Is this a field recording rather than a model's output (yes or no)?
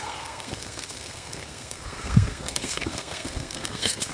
no